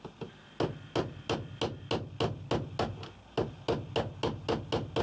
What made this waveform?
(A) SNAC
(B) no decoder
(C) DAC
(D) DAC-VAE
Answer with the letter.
B